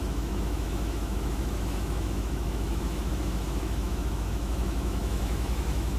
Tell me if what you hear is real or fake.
fake